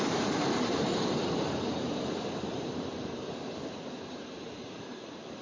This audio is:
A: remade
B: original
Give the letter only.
A